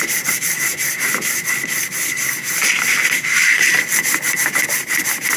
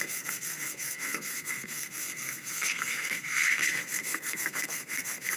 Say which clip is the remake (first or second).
second